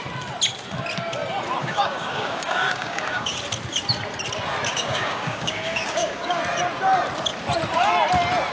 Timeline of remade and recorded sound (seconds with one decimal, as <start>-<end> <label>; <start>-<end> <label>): 0.0-1.6 recorded; 1.6-3.3 remade; 3.3-4.7 recorded; 4.7-6.4 remade; 6.4-8.5 recorded